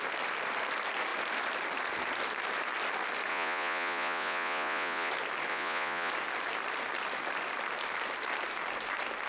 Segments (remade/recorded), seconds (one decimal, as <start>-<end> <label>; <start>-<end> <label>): 0.0-3.3 recorded; 3.3-5.1 remade; 5.1-5.5 recorded; 5.5-6.1 remade; 6.1-9.3 recorded